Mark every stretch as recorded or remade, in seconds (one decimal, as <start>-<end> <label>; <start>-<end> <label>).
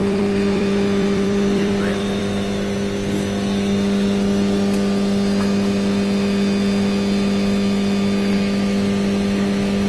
0.0-2.2 remade; 2.2-9.9 recorded